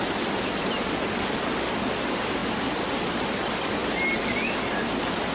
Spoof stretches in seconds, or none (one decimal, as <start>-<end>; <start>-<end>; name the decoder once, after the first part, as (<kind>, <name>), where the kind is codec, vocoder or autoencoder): 0.0-2.4 (vocoder, BigVGAN v2); 3.0-3.8

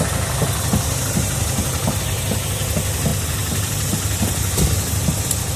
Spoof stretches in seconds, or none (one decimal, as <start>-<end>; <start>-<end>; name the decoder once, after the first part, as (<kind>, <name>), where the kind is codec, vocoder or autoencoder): 3.1-3.9 (vocoder, BigVGAN v2)